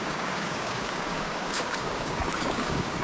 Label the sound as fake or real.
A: fake